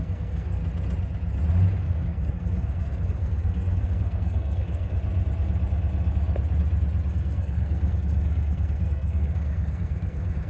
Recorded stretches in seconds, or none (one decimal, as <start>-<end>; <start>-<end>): 0.6-1.8; 5.0-7.1